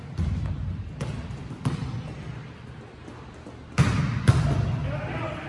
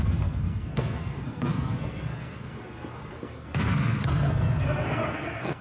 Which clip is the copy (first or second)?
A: second